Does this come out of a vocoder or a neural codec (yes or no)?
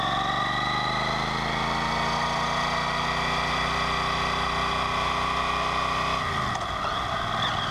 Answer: no